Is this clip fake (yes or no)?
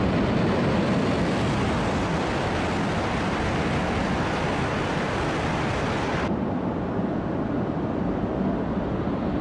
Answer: no